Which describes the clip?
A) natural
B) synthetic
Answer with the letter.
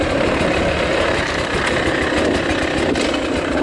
A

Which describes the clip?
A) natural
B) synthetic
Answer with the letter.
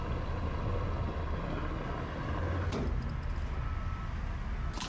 A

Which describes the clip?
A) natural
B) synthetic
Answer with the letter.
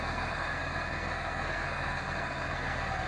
B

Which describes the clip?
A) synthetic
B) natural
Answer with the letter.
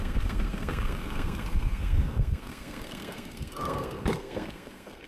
A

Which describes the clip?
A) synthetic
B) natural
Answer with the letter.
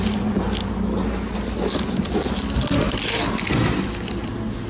B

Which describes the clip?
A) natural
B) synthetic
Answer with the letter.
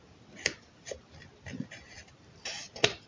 A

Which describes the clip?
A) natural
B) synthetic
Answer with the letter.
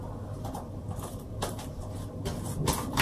A